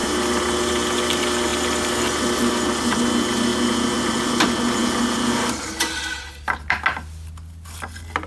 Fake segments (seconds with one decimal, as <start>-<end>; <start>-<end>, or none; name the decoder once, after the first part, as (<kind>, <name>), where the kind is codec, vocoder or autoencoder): none